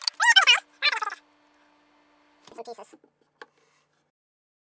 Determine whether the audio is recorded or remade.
recorded